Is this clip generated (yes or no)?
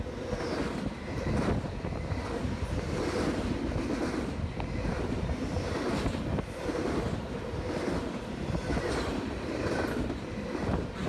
no